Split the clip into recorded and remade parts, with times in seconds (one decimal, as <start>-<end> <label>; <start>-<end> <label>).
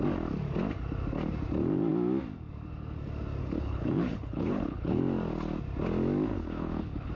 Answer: 0.0-3.4 recorded; 3.4-5.0 remade; 5.0-6.3 recorded; 6.3-7.1 remade